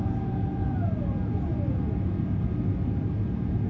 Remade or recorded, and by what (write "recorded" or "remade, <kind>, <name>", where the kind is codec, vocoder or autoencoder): recorded